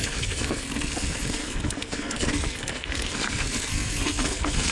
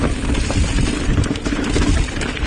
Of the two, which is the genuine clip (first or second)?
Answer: second